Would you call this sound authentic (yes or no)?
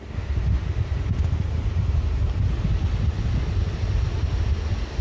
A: yes